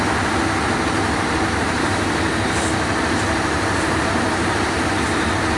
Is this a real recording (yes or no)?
yes